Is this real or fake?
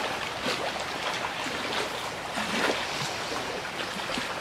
real